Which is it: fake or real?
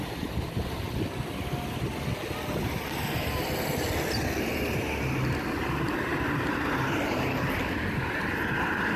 real